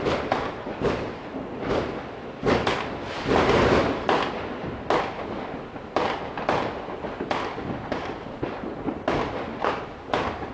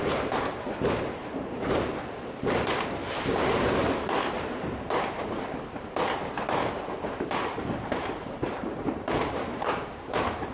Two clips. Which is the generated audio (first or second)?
second